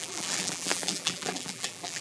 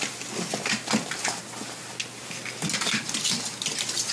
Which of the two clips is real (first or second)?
second